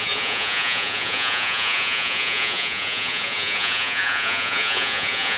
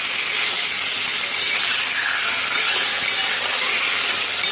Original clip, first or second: second